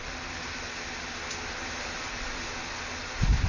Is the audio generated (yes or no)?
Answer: no